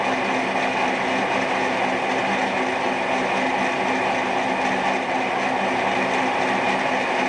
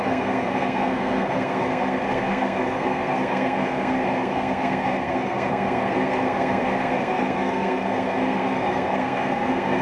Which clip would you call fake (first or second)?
second